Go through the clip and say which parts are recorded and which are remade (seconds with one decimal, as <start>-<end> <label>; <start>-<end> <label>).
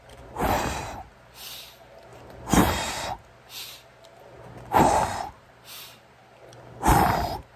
0.0-7.6 recorded